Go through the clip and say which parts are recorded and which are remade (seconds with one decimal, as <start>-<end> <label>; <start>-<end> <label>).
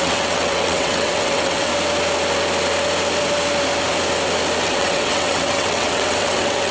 0.0-1.7 remade; 1.7-4.6 recorded; 4.6-6.7 remade